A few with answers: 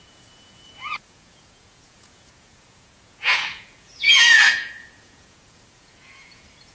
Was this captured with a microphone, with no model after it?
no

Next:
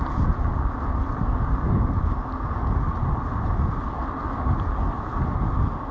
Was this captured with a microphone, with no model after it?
yes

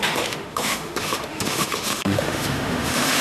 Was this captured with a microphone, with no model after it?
no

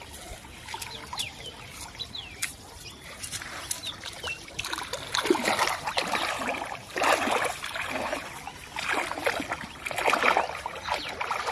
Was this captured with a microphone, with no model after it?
yes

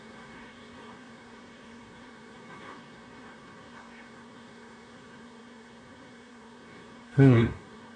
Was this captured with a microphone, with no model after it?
no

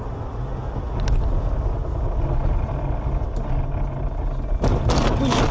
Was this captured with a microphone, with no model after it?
yes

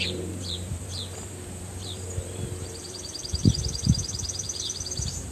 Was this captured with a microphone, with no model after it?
no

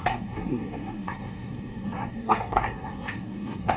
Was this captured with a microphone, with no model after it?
no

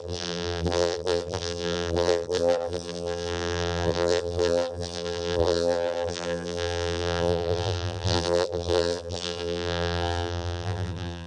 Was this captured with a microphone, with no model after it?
no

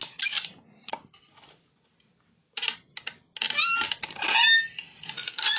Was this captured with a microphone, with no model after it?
yes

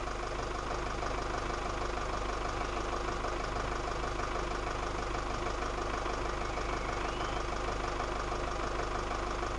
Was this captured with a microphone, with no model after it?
yes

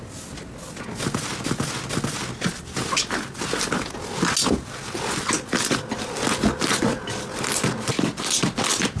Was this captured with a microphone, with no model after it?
yes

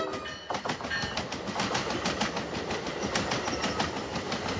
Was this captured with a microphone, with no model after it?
yes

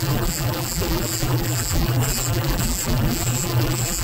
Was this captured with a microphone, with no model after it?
no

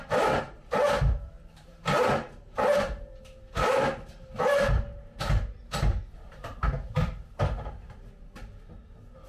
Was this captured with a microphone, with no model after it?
yes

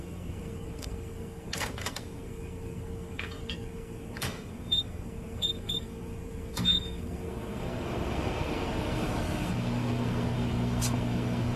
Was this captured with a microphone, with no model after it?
no